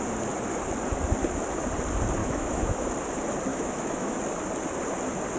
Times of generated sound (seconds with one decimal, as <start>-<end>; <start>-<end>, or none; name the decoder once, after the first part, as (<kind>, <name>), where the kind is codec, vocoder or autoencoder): 2.2-2.9 (autoencoder, DAC-VAE); 3.5-4.2